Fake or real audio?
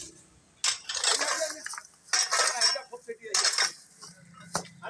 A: real